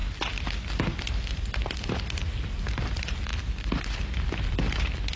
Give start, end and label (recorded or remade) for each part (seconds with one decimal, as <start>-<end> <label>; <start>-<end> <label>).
0.0-5.2 recorded